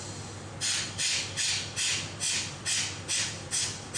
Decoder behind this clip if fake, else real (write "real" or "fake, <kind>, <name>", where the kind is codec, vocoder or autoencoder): real